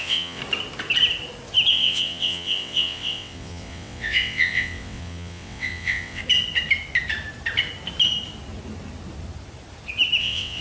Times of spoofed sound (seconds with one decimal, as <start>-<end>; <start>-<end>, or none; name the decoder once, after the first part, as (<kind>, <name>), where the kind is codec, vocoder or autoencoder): 0.0-0.4 (vocoder, WaveNeXt); 1.7-6.2; 10.2-10.6